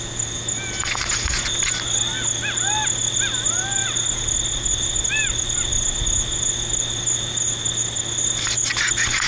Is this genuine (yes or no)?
yes